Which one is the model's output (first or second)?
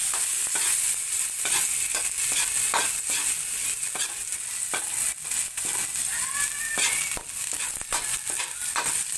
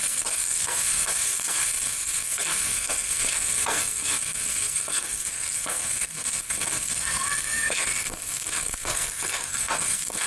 second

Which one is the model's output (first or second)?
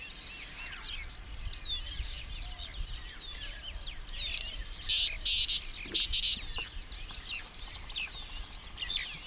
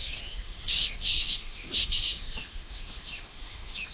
second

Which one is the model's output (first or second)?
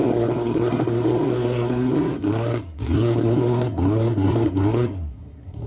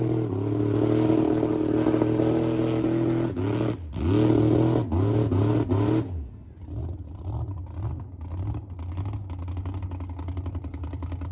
first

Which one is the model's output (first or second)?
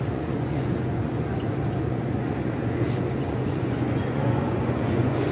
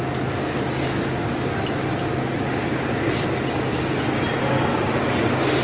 first